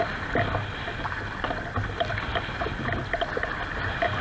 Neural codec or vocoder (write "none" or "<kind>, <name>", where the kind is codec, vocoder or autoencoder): none